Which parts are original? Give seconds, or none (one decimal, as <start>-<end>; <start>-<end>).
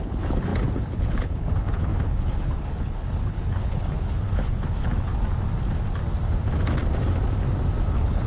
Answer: 5.1-7.9